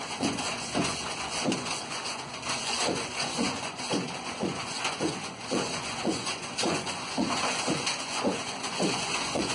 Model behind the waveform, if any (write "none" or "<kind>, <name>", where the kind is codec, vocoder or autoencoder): vocoder, Vocos